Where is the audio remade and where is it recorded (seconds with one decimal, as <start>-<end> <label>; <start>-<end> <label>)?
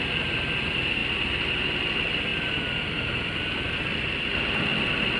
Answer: 0.0-5.2 recorded